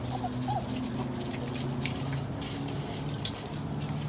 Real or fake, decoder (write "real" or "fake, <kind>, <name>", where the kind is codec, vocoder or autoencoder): real